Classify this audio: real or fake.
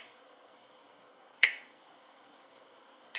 fake